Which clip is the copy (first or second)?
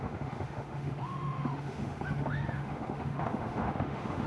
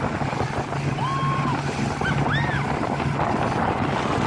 first